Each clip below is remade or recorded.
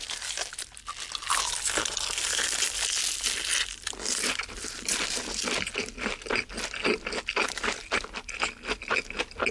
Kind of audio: recorded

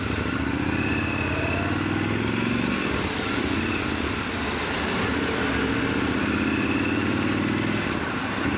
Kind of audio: recorded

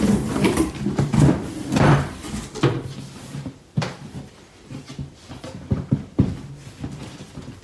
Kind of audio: remade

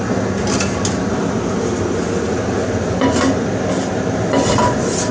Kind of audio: recorded